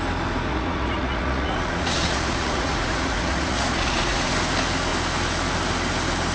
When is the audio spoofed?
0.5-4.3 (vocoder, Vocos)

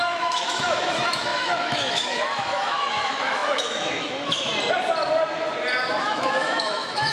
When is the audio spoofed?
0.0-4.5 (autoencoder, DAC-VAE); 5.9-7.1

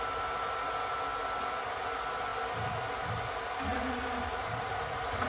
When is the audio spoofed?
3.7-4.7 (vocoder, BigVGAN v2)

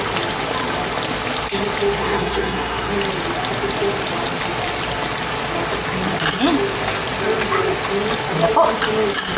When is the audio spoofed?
2.0-2.9 (codec, SNAC)